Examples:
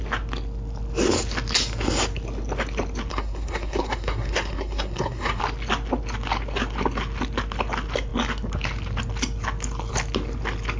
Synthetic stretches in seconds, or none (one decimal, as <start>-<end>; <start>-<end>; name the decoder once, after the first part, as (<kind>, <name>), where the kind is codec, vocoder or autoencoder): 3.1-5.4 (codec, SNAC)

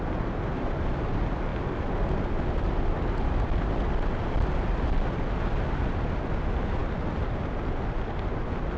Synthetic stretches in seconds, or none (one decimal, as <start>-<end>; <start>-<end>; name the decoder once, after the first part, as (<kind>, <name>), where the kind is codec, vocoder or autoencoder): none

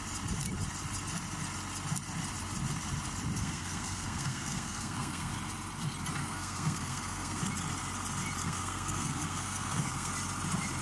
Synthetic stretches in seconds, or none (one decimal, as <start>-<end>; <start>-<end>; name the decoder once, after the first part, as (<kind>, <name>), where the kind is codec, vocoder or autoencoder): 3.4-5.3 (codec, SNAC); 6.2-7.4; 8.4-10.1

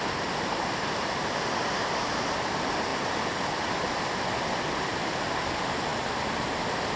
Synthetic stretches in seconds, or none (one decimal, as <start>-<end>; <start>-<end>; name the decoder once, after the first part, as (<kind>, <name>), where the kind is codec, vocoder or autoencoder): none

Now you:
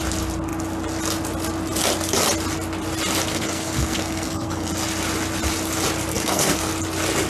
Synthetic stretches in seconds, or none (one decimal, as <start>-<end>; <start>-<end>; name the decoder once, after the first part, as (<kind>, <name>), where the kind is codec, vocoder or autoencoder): 3.3-4.7 (codec, SNAC); 6.1-6.7